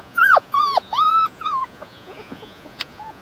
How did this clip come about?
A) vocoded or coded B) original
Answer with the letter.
A